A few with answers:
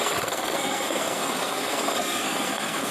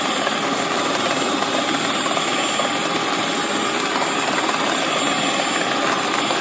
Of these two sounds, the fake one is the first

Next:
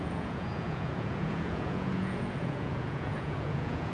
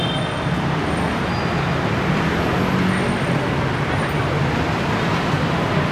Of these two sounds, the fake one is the first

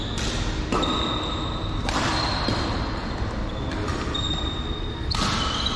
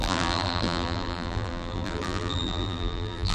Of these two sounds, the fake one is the second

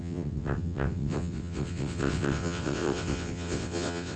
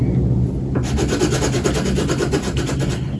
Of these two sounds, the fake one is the first